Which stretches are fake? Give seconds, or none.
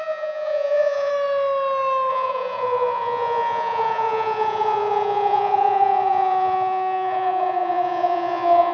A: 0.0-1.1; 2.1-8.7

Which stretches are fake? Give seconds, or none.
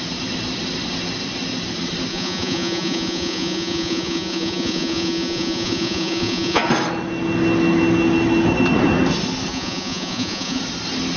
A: 2.1-6.6; 9.5-10.6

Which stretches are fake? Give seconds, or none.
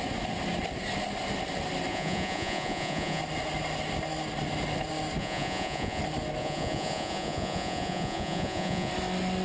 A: 1.9-3.2; 5.2-6.0; 6.4-8.9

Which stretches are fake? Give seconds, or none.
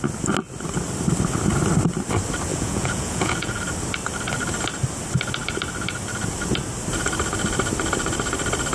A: 2.5-3.6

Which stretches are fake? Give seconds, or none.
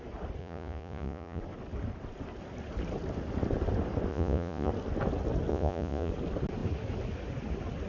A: 0.4-1.4; 4.1-4.7; 5.5-6.1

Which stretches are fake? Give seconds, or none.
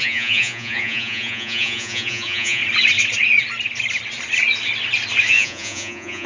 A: 0.0-2.6; 5.3-6.3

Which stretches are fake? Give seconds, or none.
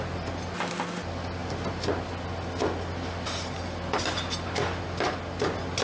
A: none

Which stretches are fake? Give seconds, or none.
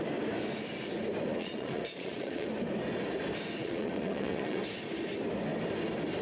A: 1.3-2.5; 3.6-4.6